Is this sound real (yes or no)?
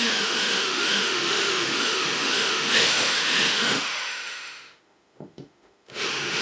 no